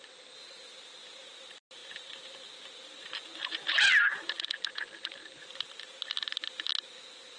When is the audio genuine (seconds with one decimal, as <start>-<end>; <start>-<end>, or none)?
0.0-7.4